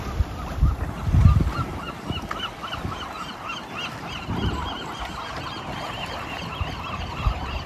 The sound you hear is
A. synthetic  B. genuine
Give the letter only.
A